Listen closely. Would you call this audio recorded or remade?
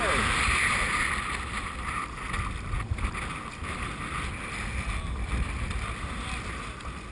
recorded